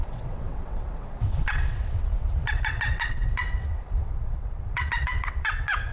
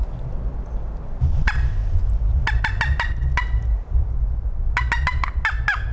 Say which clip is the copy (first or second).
first